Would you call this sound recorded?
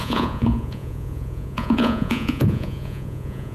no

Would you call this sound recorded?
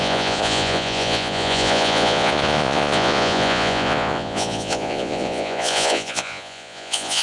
no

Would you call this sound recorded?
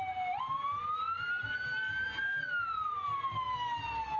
yes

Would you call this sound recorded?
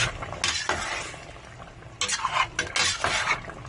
yes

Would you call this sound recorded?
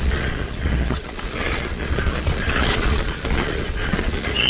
no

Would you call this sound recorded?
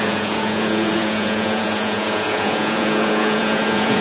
no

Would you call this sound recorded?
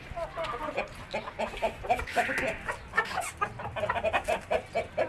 yes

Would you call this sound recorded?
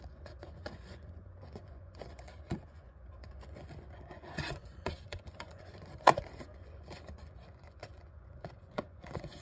no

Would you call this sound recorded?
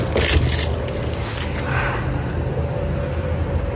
yes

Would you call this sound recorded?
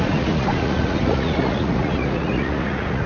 no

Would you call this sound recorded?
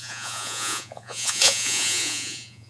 no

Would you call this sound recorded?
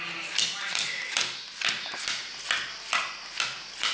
yes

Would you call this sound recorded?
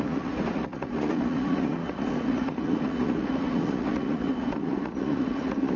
no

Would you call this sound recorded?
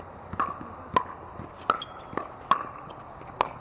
yes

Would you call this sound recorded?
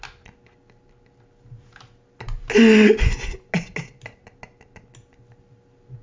yes